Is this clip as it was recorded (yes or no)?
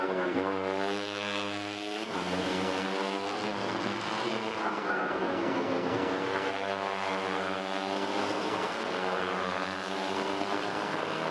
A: no